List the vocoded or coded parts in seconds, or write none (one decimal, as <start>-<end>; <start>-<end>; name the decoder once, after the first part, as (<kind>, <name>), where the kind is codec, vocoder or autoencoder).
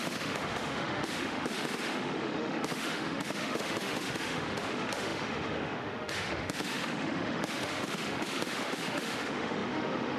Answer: 0.0-10.2 (autoencoder, DAC-VAE)